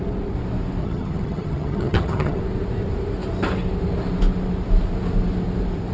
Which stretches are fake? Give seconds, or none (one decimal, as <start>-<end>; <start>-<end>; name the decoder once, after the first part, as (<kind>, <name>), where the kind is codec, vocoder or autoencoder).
0.8-2.4 (vocoder, HiFi-GAN)